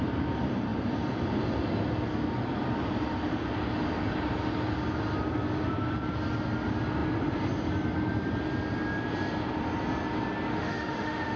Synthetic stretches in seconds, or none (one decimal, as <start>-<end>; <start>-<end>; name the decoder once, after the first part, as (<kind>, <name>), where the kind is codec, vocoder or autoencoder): 10.5-11.4 (autoencoder, DAC-VAE)

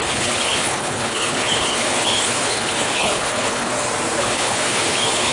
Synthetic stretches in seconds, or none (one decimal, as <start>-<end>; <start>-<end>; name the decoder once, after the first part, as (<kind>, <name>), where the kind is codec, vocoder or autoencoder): 0.0-3.7 (codec, HILCodec); 4.2-5.3

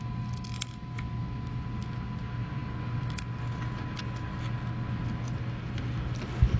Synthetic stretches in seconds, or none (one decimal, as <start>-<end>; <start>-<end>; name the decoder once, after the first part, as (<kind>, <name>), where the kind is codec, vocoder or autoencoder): none